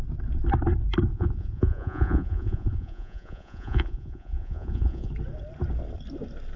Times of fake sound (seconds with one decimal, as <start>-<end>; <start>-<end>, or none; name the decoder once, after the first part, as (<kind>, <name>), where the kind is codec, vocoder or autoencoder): 1.1-5.1 (vocoder, Vocos)